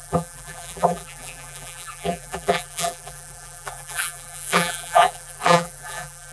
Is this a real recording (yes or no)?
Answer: no